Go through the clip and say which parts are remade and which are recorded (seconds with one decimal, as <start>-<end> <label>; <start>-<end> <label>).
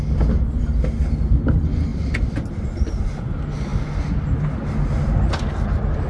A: 0.0-6.1 recorded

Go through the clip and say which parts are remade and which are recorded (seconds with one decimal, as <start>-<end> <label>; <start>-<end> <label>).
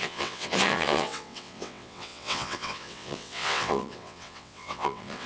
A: 0.0-5.3 remade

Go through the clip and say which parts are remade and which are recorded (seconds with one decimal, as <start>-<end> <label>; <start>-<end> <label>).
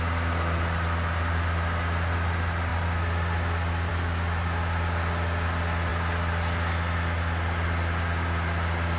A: 0.0-9.0 recorded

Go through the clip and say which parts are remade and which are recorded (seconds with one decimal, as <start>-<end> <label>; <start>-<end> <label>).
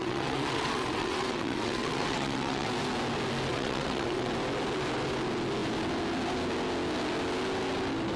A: 0.0-2.7 remade; 2.7-3.5 recorded; 3.5-4.3 remade; 4.3-8.2 recorded